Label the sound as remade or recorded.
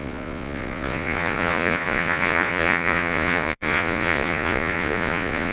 remade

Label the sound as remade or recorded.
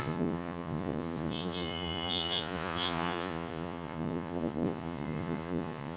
remade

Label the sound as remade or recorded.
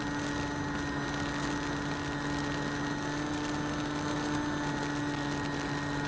recorded